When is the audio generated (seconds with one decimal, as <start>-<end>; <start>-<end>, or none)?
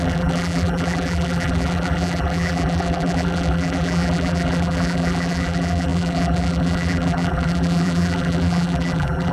0.0-9.3